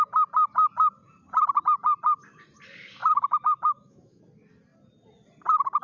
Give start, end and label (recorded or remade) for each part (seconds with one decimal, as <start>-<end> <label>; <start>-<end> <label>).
0.0-3.0 recorded; 3.0-4.2 remade; 4.2-5.8 recorded

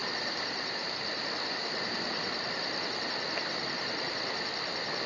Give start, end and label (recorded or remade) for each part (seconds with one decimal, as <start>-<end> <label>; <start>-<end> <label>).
0.0-5.1 recorded